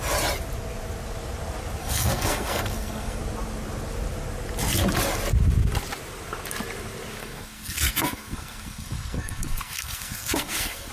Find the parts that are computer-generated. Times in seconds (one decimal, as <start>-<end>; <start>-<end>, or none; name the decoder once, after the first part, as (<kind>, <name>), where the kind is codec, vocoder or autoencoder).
1.8-3.2 (codec, SNAC); 7.2-10.9